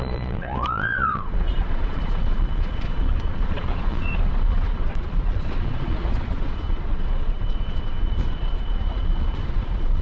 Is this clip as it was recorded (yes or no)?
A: no